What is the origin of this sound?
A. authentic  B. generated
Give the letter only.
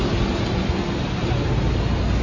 A